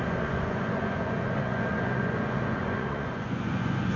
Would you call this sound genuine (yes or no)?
no